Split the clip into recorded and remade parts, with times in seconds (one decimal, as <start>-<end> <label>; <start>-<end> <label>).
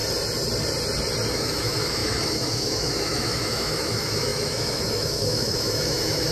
0.0-1.3 recorded; 1.3-6.3 remade